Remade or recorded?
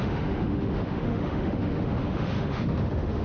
remade